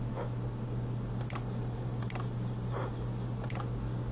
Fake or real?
real